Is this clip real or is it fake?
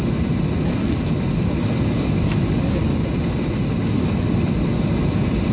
real